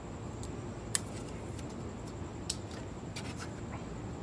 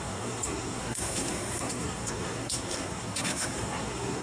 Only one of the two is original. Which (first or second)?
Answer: first